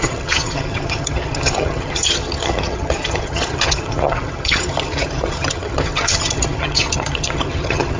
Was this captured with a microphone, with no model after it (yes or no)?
no